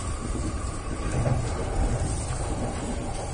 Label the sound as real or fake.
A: real